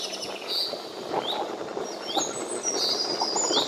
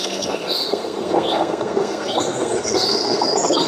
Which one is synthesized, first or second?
second